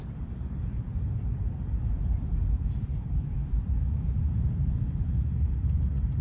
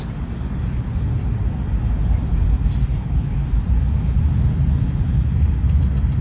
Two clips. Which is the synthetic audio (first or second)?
first